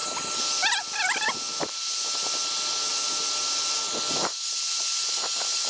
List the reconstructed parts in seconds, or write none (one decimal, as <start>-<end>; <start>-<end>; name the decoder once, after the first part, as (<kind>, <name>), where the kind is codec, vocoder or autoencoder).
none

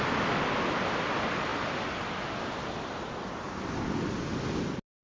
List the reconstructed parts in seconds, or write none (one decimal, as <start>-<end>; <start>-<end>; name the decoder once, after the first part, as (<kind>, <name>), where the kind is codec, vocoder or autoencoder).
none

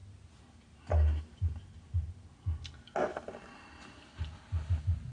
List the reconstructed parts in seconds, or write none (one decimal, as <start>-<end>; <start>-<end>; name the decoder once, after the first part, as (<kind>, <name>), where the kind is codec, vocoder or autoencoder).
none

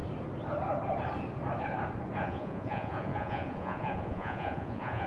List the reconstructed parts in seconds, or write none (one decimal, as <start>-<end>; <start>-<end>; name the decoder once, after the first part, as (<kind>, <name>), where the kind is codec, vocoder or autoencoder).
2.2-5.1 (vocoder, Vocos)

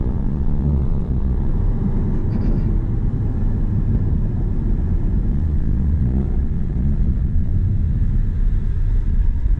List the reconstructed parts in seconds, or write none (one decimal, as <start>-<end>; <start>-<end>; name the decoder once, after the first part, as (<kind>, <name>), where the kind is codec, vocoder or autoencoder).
0.0-1.5 (vocoder, Vocos); 5.3-7.5; 9.1-9.6

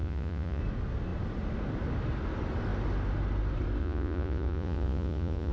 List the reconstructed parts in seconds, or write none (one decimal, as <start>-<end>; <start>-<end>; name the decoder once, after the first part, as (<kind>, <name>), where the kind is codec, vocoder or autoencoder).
0.0-0.6 (vocoder, Vocos); 3.8-5.5